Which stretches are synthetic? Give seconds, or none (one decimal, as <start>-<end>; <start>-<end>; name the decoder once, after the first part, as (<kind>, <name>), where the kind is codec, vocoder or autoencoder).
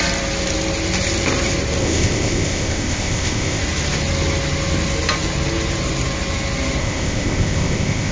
1.8-3.6 (codec, ZipCodec); 6.8-8.1